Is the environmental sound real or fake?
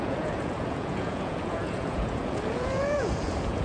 fake